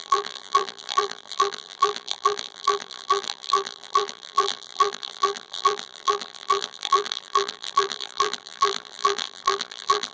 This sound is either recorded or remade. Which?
remade